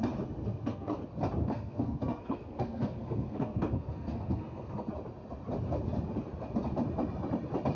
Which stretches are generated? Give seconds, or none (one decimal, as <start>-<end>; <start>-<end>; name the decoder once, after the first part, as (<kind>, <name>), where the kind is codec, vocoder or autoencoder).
0.4-1.0 (codec, SNAC); 1.4-4.9